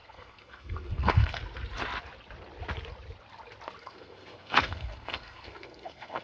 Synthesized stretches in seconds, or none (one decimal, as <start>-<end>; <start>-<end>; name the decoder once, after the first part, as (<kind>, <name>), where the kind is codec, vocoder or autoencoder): 0.0-1.4 (codec, SNAC); 3.8-6.2